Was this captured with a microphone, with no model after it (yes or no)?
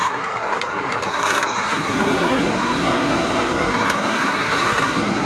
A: no